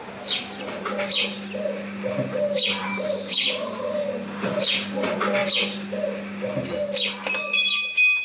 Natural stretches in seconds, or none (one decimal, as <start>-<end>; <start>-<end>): 0.0-0.4; 1.1-2.8; 3.9-8.2